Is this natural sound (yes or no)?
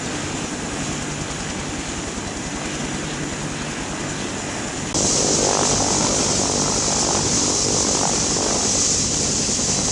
yes